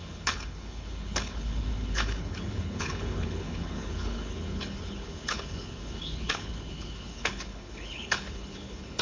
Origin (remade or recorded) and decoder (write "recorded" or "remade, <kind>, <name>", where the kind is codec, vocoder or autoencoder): remade, codec, HILCodec